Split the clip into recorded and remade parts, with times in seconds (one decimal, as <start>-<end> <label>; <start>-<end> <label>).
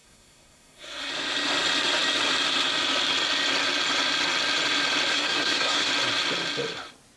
0.0-1.1 remade; 1.1-5.1 recorded; 5.1-5.9 remade; 5.9-7.2 recorded